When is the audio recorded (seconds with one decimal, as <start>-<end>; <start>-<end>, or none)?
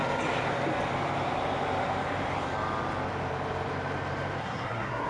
0.0-4.4